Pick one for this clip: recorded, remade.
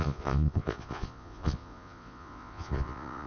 remade